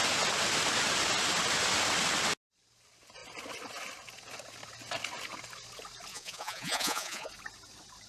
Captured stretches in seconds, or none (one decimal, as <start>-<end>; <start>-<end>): 0.0-6.1; 7.3-8.1